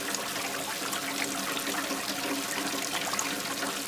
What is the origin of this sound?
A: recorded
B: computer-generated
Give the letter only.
A